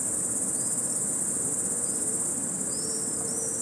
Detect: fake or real real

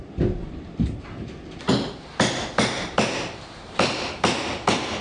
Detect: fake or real real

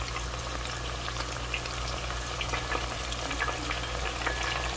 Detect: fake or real real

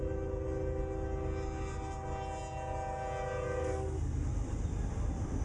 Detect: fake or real real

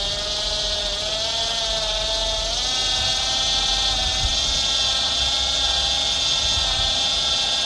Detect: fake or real real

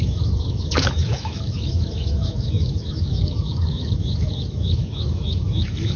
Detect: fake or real fake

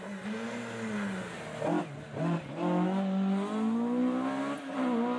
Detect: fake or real real